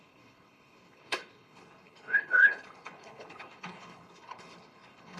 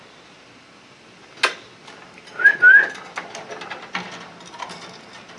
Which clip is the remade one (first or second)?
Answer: first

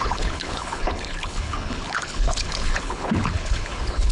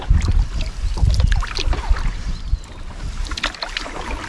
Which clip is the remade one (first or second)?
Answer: first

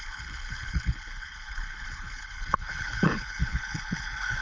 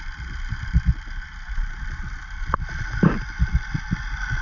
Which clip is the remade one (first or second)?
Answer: first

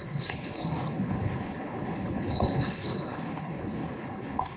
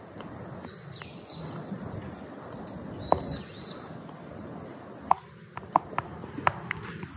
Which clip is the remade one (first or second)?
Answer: first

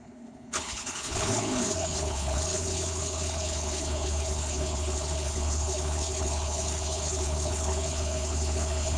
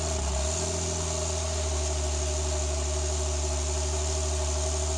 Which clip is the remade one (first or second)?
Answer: first